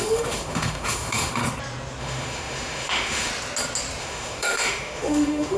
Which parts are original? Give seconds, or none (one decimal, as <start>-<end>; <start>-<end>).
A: 1.4-2.0; 3.3-4.0